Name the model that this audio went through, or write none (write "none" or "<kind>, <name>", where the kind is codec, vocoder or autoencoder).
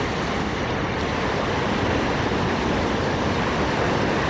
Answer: none